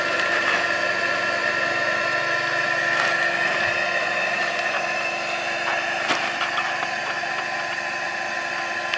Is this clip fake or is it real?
real